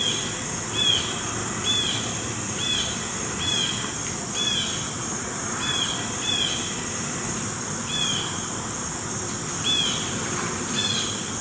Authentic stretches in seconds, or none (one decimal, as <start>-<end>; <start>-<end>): 0.0-1.4; 2.8-5.0; 5.9-11.4